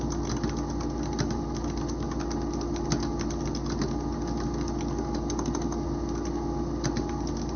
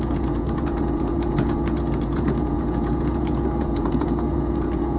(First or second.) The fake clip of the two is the second